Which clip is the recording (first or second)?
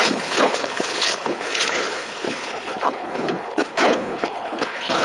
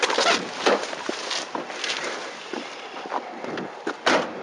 second